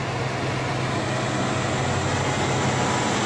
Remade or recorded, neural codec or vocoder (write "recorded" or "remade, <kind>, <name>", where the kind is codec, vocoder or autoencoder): recorded